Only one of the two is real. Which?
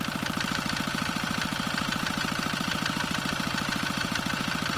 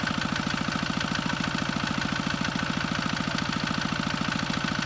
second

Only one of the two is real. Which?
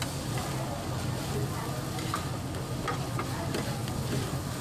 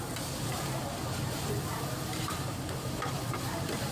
first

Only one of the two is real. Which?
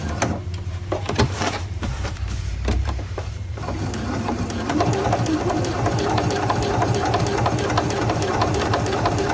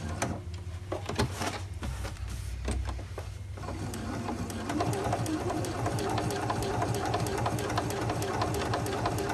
second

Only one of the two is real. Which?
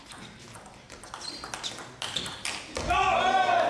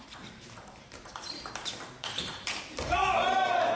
first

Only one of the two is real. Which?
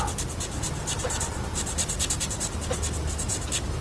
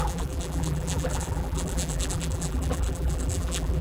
first